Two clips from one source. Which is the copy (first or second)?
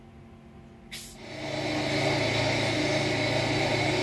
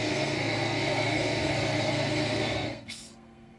second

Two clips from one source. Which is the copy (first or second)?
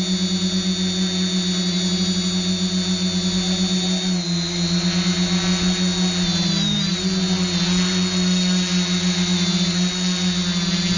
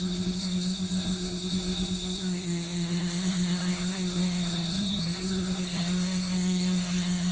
second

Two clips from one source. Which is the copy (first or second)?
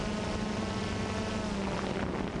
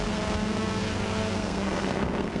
second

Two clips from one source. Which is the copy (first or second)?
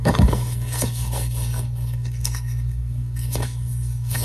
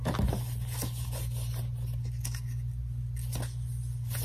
first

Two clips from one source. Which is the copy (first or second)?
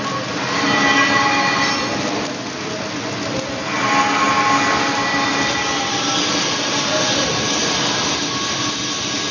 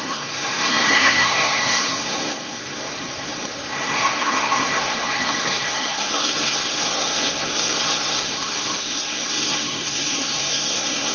second